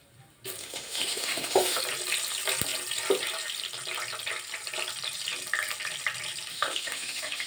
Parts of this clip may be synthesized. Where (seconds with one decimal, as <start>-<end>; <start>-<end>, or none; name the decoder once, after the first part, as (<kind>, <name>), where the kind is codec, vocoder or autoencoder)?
0.6-1.8 (autoencoder, DAC-VAE); 6.5-7.5